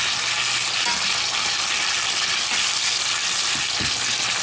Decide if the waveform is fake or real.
real